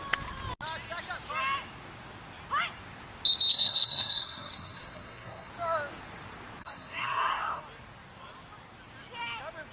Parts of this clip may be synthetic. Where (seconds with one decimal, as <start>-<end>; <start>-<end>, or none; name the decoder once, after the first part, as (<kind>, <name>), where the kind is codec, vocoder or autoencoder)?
3.5-5.5 (codec, SNAC); 6.6-7.6